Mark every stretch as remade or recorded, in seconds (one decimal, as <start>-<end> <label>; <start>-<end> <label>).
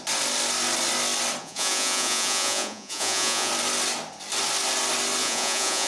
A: 0.0-1.4 recorded; 1.4-3.5 remade; 3.5-5.2 recorded; 5.2-5.9 remade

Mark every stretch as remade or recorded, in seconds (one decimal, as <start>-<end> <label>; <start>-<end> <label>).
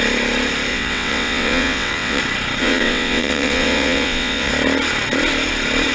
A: 0.0-0.7 recorded; 0.7-2.2 remade; 2.2-2.6 recorded; 2.6-4.5 remade; 4.5-5.9 recorded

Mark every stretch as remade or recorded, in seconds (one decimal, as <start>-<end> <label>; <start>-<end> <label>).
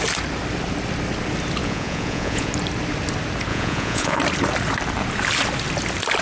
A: 0.0-1.6 recorded; 1.6-2.5 remade; 2.5-3.5 recorded; 3.5-4.2 remade; 4.2-6.2 recorded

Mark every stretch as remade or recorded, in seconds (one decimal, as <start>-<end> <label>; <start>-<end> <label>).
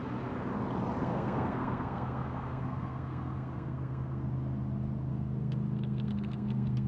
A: 0.0-1.0 recorded; 1.0-4.3 remade; 4.3-5.1 recorded; 5.1-6.9 remade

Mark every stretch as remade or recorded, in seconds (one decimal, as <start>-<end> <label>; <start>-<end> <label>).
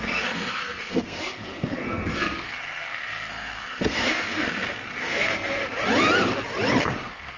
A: 0.0-5.6 remade; 5.6-6.8 recorded; 6.8-7.4 remade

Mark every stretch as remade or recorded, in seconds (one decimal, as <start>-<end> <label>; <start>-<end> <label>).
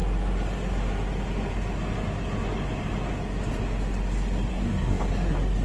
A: 0.0-4.5 recorded; 4.5-5.0 remade; 5.0-5.6 recorded